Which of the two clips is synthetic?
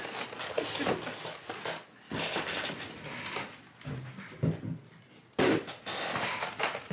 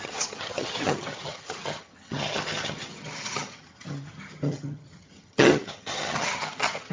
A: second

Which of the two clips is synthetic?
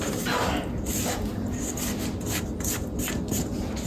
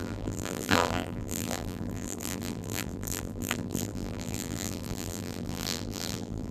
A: second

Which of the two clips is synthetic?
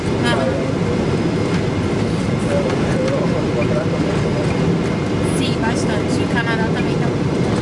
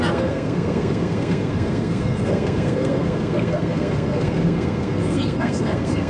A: second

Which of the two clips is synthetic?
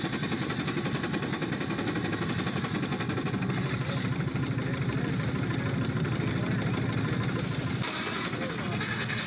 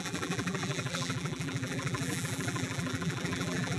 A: second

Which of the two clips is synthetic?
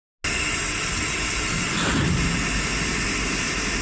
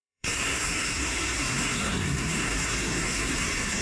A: second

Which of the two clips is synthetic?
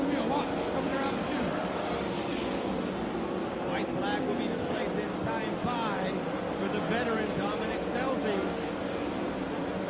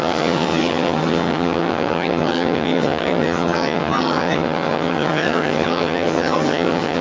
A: second